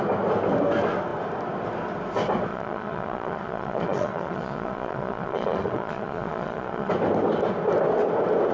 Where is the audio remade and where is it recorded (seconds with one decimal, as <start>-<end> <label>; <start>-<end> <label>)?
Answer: 0.0-2.5 recorded; 2.5-6.9 remade; 6.9-8.5 recorded